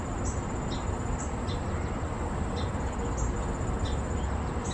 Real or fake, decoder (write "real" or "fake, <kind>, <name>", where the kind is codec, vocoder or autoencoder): real